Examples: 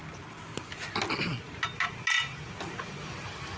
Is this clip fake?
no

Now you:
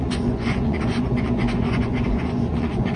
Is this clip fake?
yes